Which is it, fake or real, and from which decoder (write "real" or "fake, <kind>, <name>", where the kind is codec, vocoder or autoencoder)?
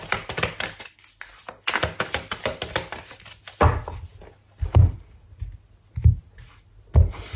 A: real